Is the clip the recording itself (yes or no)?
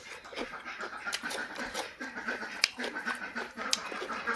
no